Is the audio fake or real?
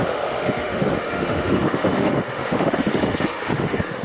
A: fake